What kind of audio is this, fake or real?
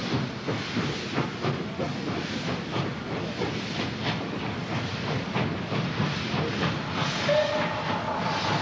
real